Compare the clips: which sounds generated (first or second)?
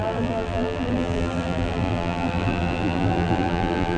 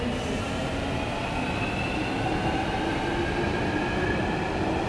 first